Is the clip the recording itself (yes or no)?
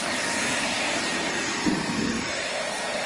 yes